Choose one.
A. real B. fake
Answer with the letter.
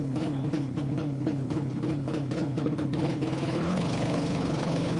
B